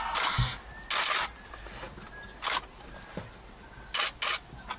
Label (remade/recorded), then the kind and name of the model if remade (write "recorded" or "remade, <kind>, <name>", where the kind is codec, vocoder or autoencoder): recorded